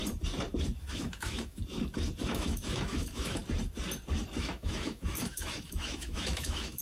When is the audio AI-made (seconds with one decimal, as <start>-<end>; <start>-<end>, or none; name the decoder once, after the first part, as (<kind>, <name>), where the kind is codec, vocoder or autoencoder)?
0.8-1.6 (autoencoder, DAC-VAE); 2.2-3.4; 4.4-6.8